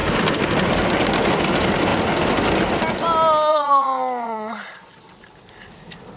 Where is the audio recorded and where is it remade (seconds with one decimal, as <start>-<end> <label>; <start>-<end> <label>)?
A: 0.0-3.5 recorded; 3.5-4.9 remade; 4.9-6.2 recorded